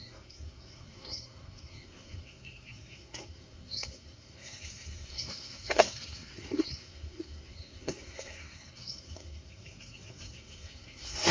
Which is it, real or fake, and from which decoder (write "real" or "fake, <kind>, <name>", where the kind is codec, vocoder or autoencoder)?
fake, codec, SNAC